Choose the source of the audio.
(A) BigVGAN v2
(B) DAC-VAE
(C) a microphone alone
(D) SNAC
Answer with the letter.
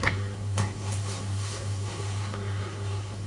D